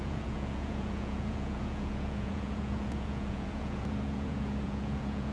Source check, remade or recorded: remade